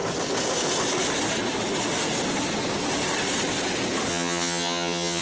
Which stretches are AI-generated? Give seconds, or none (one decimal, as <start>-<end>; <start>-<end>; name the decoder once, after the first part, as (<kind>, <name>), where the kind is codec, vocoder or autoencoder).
4.1-5.2 (vocoder, HiFi-GAN)